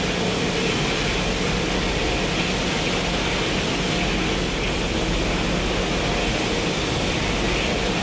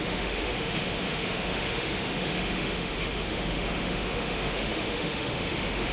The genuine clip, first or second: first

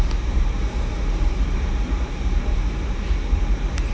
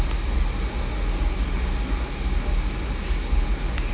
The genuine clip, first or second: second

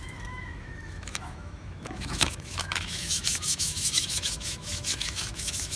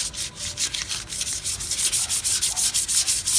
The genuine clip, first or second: second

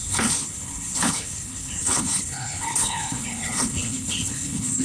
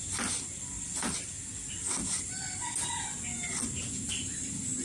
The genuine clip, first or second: second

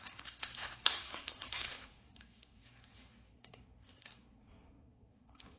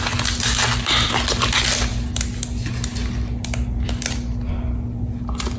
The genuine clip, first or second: second